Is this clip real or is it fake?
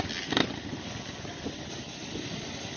real